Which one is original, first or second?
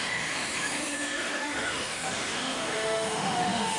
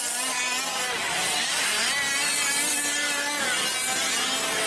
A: second